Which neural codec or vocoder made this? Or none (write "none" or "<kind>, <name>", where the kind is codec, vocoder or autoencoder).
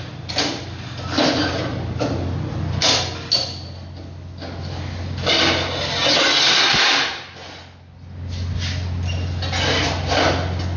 none